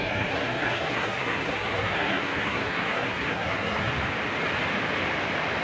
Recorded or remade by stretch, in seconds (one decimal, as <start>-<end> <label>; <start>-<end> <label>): 0.0-3.9 remade; 3.9-5.6 recorded